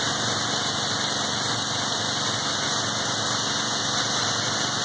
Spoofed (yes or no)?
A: no